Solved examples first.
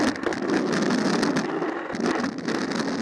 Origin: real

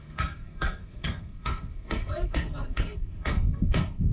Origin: fake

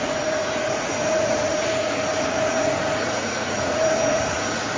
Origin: fake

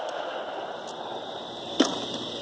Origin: real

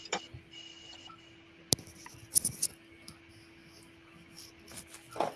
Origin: real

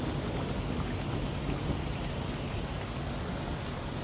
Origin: real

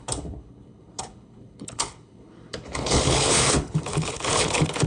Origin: fake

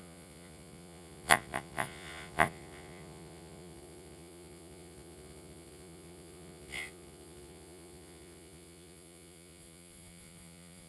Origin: fake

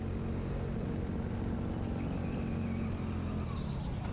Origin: real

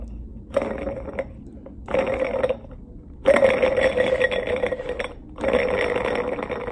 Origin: real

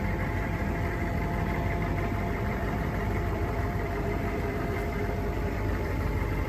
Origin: fake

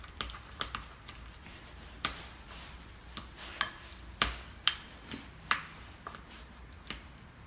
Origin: real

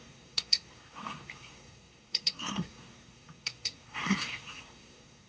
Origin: fake